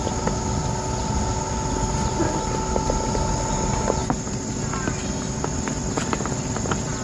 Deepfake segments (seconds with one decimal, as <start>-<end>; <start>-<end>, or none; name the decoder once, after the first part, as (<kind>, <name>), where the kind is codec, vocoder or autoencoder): none